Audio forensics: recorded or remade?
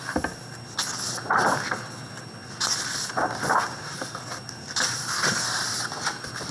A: recorded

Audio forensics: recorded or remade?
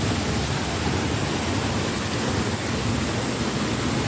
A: recorded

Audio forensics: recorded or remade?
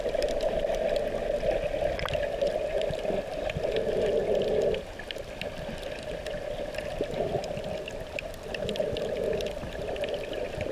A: recorded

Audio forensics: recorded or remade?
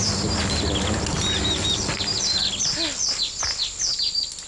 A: recorded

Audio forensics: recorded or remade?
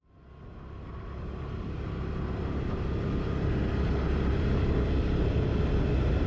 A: recorded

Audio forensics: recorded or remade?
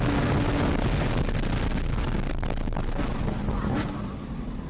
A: recorded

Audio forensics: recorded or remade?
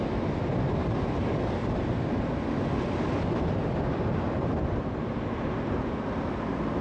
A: recorded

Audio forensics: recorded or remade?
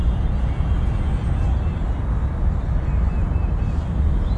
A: recorded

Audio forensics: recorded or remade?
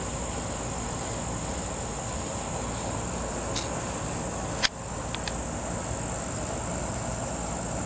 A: recorded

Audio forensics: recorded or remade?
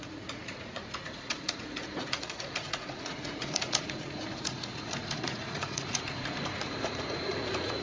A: remade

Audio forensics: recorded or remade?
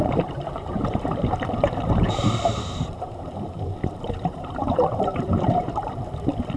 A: remade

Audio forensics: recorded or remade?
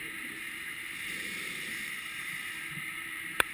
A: remade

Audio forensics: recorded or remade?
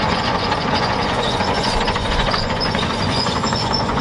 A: remade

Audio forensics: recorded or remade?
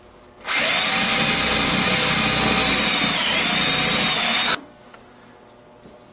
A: recorded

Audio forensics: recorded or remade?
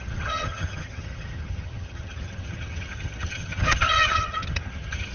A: remade